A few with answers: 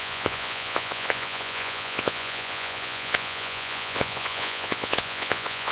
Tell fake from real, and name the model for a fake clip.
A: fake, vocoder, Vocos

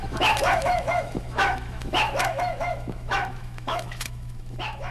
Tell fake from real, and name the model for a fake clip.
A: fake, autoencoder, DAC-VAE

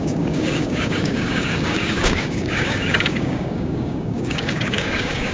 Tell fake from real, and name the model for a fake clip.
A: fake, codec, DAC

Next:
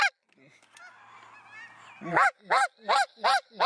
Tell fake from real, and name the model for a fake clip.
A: real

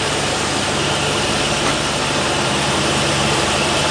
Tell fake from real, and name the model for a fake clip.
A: fake, vocoder, BigVGAN v2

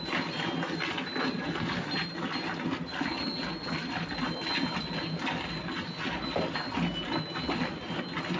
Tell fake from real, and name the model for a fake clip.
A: real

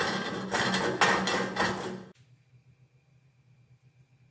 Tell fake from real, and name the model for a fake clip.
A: real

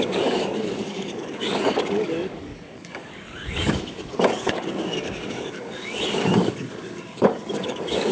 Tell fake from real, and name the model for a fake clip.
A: fake, codec, DAC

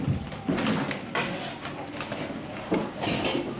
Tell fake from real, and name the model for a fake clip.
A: real